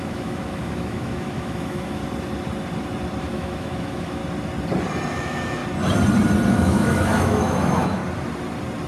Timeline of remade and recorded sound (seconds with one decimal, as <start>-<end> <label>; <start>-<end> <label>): 0.0-2.0 remade; 2.0-3.2 recorded; 3.2-4.2 remade; 4.2-5.1 recorded; 5.1-5.6 remade; 5.6-6.5 recorded; 6.5-8.0 remade; 8.0-8.9 recorded